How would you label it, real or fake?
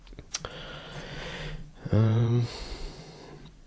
fake